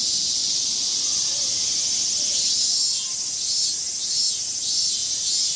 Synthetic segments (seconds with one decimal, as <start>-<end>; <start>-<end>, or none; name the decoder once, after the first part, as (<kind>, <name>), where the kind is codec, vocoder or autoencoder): none